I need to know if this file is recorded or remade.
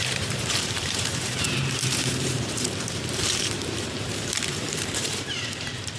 remade